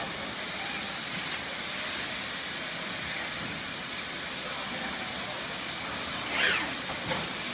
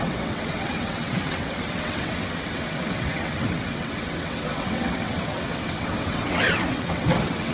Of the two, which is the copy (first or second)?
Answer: second